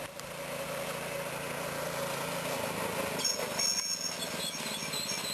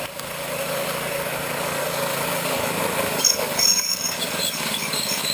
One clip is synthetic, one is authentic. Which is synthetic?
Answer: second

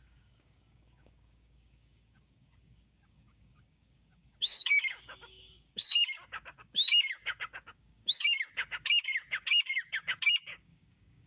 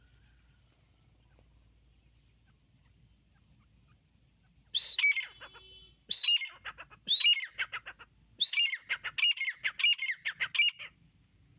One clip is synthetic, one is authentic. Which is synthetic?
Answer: first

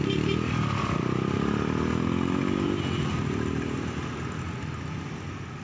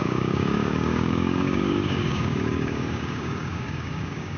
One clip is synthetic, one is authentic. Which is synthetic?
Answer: second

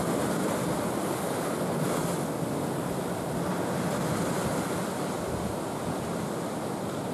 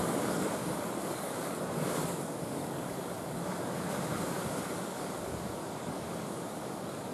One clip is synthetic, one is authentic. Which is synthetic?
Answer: second